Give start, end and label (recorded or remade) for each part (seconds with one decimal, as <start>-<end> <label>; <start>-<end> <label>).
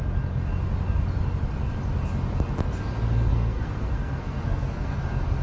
0.0-3.3 recorded; 3.3-5.0 remade; 5.0-5.4 recorded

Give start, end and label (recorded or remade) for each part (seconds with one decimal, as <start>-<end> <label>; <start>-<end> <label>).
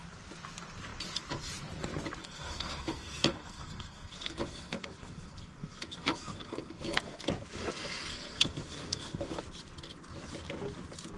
0.0-2.2 recorded; 2.2-7.3 remade; 7.3-8.1 recorded; 8.1-9.4 remade; 9.4-11.2 recorded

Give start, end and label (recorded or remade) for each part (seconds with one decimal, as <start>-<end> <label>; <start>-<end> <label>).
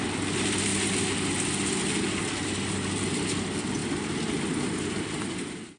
0.0-5.8 recorded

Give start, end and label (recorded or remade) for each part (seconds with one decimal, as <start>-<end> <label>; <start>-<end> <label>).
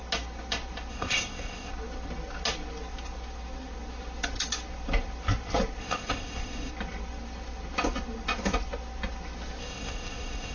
0.0-0.9 recorded; 0.9-1.7 remade; 1.7-5.8 recorded; 5.8-6.7 remade; 6.7-9.6 recorded; 9.6-10.5 remade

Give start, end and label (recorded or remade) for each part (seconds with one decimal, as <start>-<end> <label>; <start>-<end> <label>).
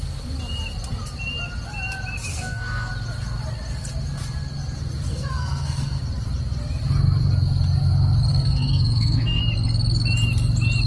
0.0-2.3 recorded; 2.3-2.9 remade; 2.9-5.1 recorded; 5.1-6.0 remade; 6.0-8.3 recorded; 8.3-9.4 remade; 9.4-10.9 recorded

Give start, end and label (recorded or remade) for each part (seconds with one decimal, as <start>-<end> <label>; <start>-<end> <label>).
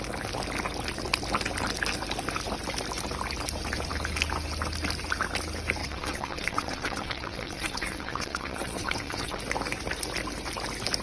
0.0-5.8 recorded; 5.8-9.4 remade; 9.4-11.0 recorded